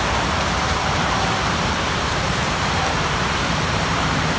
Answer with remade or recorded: remade